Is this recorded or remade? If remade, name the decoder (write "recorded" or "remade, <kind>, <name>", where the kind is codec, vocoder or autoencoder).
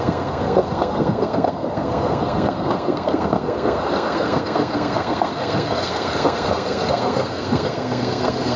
remade, codec, SNAC